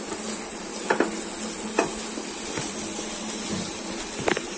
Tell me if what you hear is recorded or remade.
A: recorded